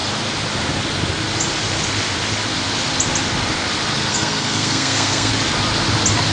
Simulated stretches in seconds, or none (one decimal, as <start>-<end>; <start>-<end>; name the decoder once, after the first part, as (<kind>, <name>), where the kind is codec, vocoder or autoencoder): 4.1-5.3 (codec, SNAC)